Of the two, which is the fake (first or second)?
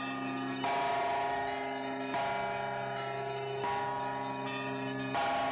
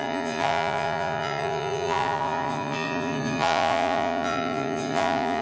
second